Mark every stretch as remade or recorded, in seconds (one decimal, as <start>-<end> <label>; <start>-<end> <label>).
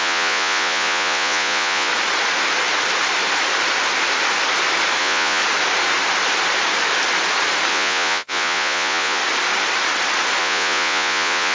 0.0-1.9 remade; 1.9-5.0 recorded; 5.0-5.4 remade; 5.4-7.7 recorded; 7.7-9.2 remade; 9.2-10.4 recorded; 10.4-11.5 remade